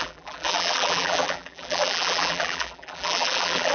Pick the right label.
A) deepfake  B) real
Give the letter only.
A